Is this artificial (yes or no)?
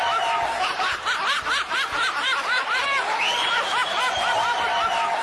no